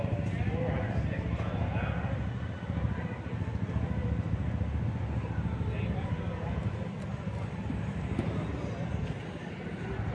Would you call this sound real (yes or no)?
yes